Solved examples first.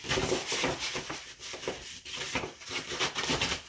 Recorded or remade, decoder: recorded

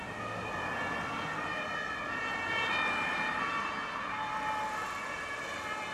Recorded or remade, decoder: recorded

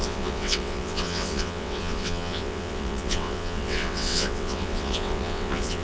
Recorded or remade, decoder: remade, vocoder, WaveNeXt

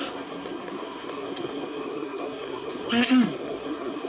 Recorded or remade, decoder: remade, codec, SNAC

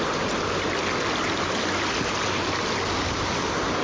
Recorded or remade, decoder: recorded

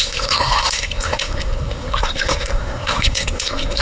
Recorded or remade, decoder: remade, codec, SNAC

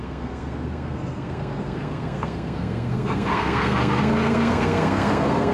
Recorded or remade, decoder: remade, codec, SNAC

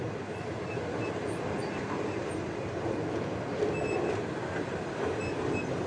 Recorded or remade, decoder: recorded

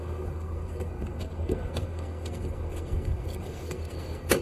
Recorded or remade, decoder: remade, codec, SNAC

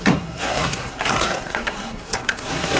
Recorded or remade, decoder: remade, codec, SNAC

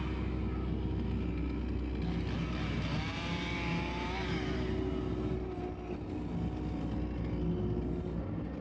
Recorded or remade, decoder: recorded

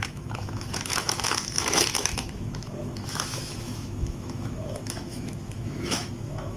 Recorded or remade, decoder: remade, autoencoder, DAC-VAE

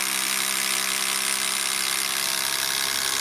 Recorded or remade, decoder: recorded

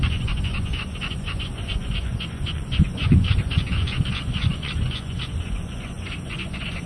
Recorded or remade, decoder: remade, vocoder, Vocos